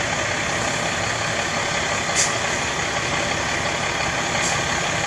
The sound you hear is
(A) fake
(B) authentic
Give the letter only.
B